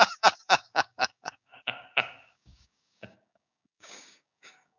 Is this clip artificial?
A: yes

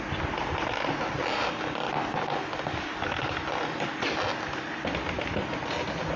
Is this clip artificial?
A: no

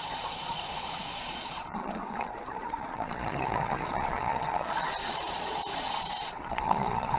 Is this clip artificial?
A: yes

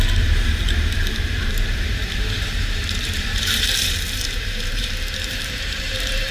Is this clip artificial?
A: yes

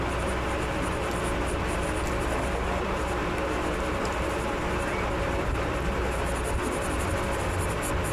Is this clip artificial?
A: no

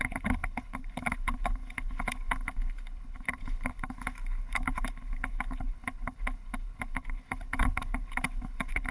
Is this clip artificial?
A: yes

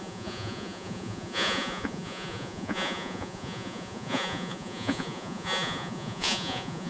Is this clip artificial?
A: yes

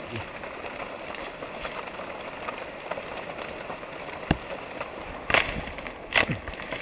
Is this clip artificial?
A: no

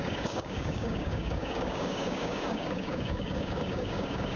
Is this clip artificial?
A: yes